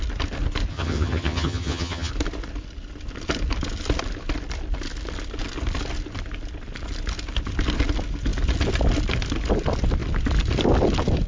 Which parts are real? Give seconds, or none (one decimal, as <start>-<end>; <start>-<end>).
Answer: 0.0-0.7; 2.1-11.3